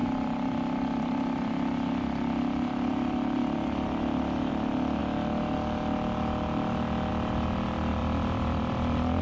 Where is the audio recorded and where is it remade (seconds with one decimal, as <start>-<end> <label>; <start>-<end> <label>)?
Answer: 0.0-4.5 remade; 4.5-8.0 recorded; 8.0-9.2 remade